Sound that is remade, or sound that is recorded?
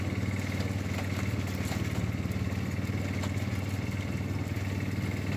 recorded